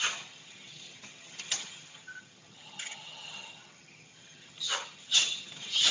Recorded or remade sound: remade